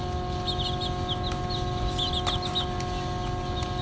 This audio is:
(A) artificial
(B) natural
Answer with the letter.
B